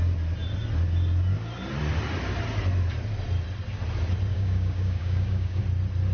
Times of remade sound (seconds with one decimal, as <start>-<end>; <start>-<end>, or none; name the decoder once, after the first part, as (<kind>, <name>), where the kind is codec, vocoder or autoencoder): 4.3-5.6 (codec, DAC)

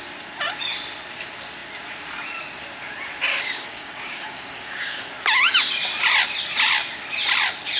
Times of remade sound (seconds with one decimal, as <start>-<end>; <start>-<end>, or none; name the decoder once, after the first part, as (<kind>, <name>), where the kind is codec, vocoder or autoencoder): 3.3-5.1 (codec, DAC)

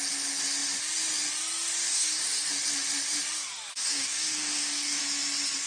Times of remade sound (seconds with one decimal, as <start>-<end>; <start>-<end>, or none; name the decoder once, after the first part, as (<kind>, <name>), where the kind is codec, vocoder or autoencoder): 1.9-2.5 (codec, DAC); 3.7-5.0

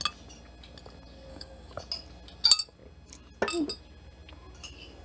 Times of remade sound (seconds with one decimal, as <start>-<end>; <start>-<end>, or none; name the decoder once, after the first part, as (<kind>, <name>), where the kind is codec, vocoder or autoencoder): 1.3-1.8 (codec, DAC)

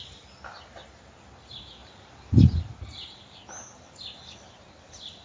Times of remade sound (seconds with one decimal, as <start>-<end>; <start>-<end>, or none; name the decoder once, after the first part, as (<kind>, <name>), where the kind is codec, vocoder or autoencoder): none

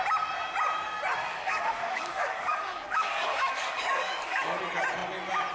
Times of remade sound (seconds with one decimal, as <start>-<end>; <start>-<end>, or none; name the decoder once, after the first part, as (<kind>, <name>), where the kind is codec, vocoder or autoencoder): 1.3-4.6 (codec, DAC)

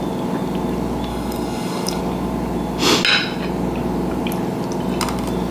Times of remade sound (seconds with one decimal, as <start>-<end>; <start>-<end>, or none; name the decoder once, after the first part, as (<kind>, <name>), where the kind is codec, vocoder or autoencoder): 1.1-2.0 (codec, DAC)